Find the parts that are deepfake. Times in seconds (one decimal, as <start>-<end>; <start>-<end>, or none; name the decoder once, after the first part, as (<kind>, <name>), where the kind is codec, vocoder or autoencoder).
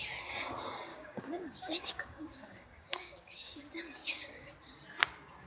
0.9-3.6 (codec, DAC); 4.0-4.5